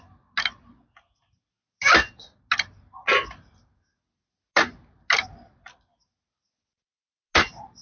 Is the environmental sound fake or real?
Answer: real